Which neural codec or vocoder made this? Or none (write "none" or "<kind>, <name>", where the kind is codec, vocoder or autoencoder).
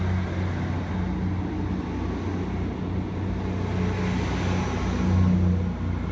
none